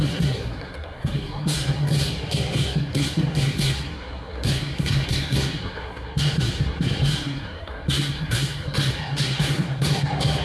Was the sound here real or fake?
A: fake